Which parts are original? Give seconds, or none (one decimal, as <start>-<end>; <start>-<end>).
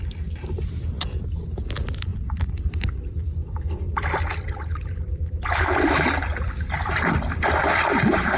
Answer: 0.0-2.1; 5.7-8.4